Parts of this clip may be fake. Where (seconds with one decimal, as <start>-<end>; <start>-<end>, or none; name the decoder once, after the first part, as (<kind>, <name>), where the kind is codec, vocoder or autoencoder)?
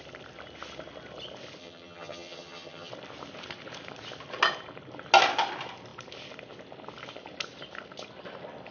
1.6-2.9 (vocoder, HiFi-GAN)